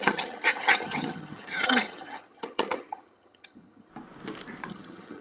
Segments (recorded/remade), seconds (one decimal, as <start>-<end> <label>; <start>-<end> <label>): 0.0-3.9 remade; 3.9-4.7 recorded; 4.7-5.2 remade